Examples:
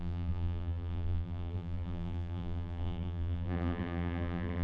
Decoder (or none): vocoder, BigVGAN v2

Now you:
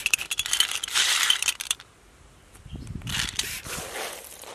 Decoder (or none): vocoder, BigVGAN v2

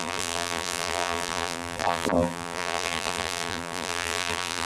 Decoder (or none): vocoder, BigVGAN v2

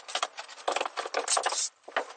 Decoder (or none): none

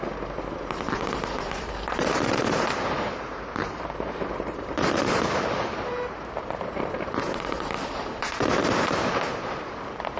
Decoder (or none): vocoder, BigVGAN v2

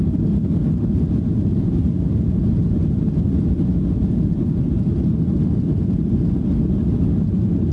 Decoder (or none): none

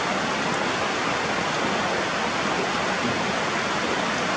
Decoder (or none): none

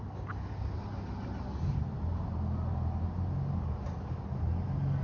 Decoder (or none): none